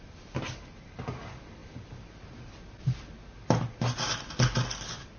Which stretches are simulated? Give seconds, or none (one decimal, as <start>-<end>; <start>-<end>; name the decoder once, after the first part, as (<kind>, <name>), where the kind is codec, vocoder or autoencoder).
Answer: none